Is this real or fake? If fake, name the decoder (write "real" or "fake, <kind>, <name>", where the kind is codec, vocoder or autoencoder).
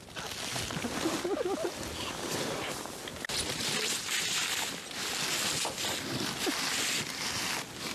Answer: real